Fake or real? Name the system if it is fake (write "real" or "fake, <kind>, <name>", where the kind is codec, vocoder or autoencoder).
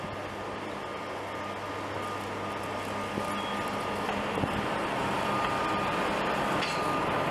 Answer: real